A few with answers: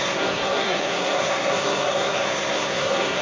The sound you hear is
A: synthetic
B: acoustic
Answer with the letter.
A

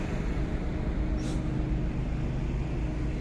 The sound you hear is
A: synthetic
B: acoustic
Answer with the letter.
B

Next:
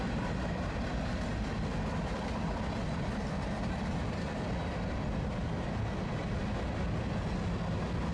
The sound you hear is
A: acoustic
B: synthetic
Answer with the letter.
A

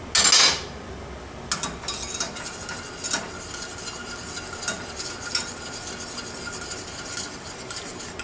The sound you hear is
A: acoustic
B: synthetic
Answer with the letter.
A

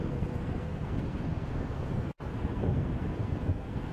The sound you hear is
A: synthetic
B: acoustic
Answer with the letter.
A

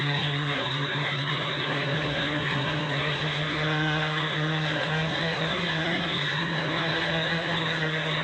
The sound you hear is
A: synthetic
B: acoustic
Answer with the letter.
A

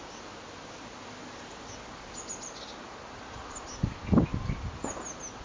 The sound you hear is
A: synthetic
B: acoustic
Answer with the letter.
B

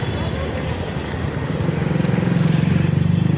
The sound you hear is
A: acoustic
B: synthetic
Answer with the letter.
A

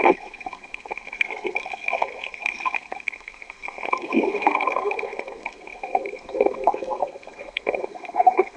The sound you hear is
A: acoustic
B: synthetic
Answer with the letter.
B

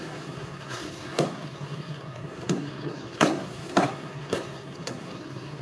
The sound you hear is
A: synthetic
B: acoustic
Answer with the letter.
A